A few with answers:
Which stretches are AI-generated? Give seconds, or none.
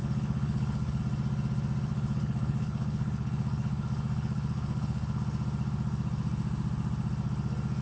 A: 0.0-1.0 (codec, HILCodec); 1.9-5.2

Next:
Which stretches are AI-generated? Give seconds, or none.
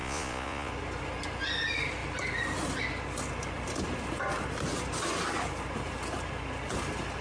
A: 0.0-0.7 (vocoder, Vocos)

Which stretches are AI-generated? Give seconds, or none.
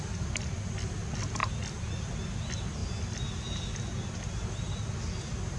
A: none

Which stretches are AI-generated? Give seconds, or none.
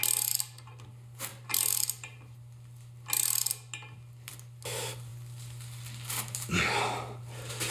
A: none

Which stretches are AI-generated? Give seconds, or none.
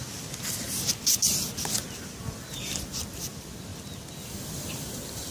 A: none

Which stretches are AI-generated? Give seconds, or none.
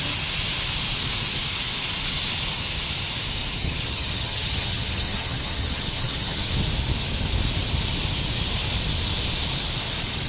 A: 3.6-6.5 (vocoder, HiFi-GAN)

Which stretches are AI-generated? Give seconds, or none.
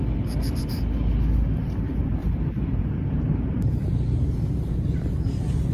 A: 2.2-5.7 (vocoder, BigVGAN v2)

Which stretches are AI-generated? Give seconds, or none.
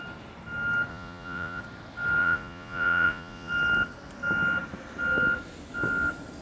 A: 0.9-1.6 (vocoder, Vocos); 2.2-3.5